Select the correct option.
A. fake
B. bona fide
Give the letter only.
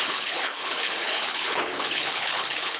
A